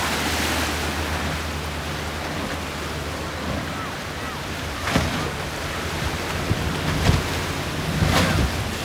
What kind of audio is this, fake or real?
real